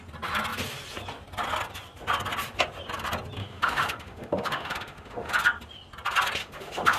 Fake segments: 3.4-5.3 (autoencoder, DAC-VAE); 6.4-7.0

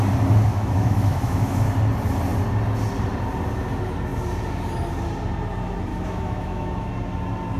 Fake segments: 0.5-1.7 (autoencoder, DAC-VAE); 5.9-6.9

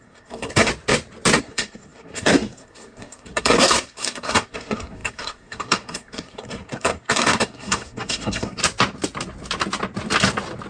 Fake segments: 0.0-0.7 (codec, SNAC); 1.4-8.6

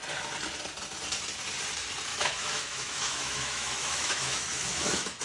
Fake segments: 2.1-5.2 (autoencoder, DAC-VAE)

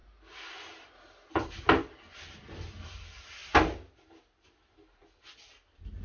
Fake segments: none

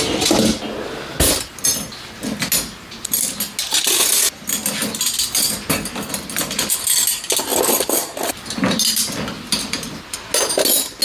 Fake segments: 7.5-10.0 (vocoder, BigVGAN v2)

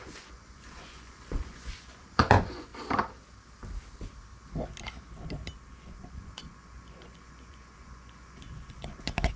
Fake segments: 0.0-2.7 (vocoder, Vocos); 5.7-9.4

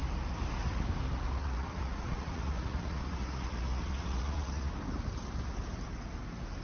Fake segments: 1.4-4.7 (vocoder, Vocos)